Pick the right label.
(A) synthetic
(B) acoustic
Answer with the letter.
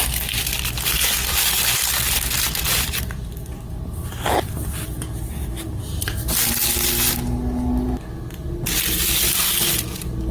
B